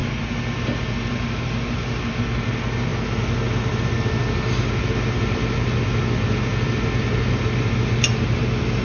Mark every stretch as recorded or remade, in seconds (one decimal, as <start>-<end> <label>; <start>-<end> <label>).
0.0-8.8 recorded